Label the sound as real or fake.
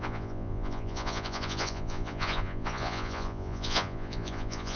fake